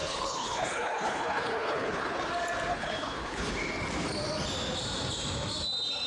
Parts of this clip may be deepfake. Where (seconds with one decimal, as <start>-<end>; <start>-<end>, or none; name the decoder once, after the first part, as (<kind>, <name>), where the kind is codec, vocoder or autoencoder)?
0.0-2.3 (codec, HILCodec); 2.7-3.5